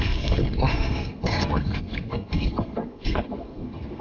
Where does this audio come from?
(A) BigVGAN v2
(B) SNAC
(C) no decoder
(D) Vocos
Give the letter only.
B